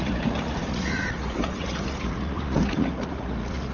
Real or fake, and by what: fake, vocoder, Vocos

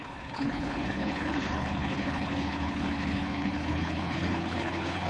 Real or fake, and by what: fake, codec, HILCodec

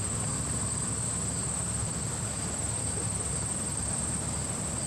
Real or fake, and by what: real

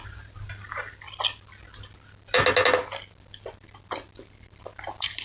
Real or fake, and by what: real